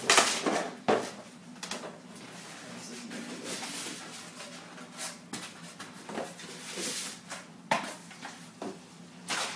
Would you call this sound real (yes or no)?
yes